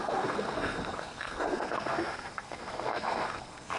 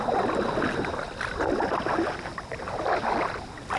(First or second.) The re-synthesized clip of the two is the first